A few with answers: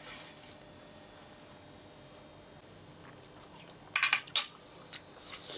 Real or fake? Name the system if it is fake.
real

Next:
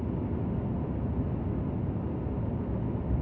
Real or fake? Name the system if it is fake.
real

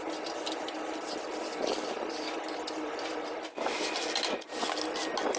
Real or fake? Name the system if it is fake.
real